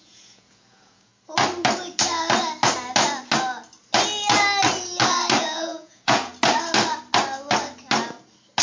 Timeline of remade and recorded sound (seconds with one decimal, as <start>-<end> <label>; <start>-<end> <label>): 0.0-1.1 remade; 1.1-5.4 recorded; 5.4-6.3 remade; 6.3-8.6 recorded